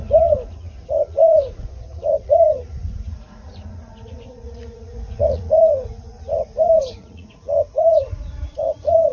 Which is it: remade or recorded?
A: remade